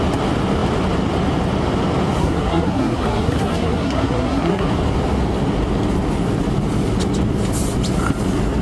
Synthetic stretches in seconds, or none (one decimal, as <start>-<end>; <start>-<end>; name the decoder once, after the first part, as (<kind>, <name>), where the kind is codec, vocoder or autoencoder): 2.2-4.7 (codec, SNAC)